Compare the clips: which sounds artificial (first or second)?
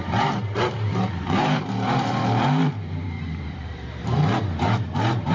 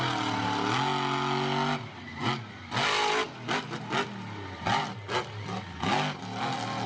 first